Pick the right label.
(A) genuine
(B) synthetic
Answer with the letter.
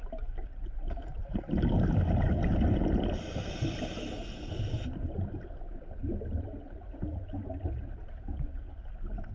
A